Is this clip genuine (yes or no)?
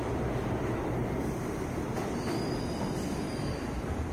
yes